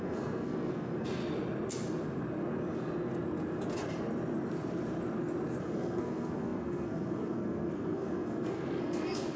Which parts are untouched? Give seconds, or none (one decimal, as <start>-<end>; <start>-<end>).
1.2-5.6